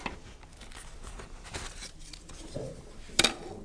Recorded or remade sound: recorded